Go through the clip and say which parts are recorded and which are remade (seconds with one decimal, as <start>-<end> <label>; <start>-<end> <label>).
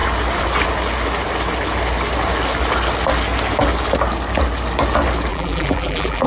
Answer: 0.0-5.3 recorded; 5.3-6.3 remade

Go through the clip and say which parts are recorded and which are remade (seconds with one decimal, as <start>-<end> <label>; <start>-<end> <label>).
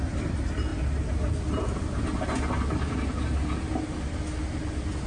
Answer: 0.0-5.1 recorded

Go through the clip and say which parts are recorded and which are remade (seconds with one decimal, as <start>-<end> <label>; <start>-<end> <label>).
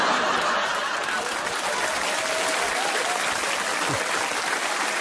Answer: 0.0-5.0 recorded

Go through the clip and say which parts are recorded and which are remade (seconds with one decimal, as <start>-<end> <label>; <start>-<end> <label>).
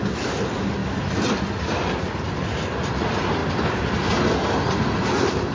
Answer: 0.0-5.5 recorded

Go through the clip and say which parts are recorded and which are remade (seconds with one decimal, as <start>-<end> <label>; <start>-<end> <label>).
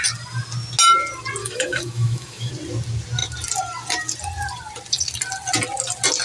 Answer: 0.0-1.4 recorded; 1.4-2.5 remade; 2.5-6.2 recorded